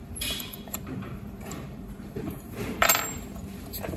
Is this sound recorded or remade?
remade